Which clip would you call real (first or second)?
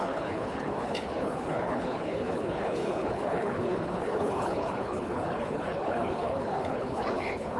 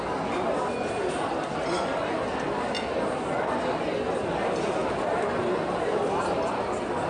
second